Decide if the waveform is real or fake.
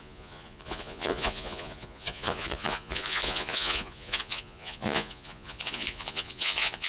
fake